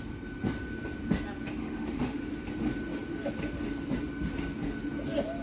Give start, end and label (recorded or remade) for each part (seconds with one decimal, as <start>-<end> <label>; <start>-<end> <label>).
0.0-1.6 recorded; 1.6-2.2 remade; 2.2-5.4 recorded